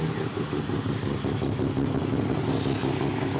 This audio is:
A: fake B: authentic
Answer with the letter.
B